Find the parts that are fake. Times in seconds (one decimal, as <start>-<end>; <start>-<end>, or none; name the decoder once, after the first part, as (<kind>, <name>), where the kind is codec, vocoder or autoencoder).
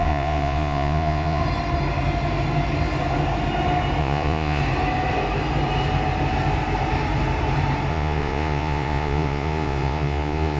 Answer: 0.0-1.4 (vocoder, Vocos); 4.0-4.6; 7.9-10.6